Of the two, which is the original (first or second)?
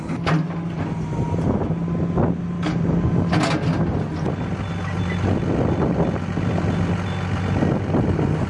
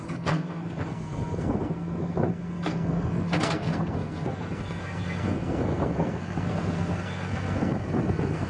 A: first